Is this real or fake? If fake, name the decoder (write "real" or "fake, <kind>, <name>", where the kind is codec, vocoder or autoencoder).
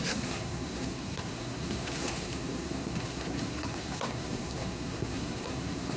fake, codec, SNAC